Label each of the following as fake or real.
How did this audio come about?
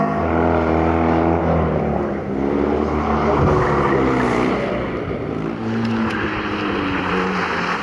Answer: real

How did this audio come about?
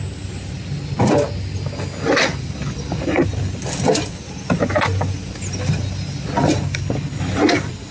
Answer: real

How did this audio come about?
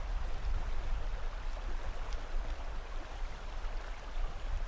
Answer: real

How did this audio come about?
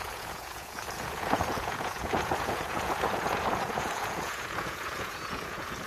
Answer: fake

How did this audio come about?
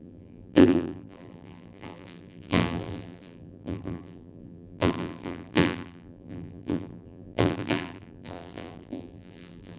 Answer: fake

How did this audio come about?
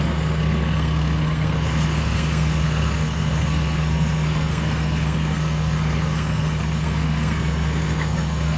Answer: fake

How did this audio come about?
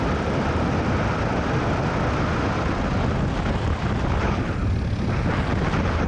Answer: real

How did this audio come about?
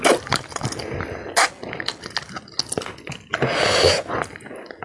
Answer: real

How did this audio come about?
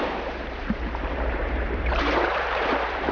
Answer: fake